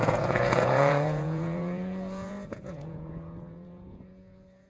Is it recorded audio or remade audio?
remade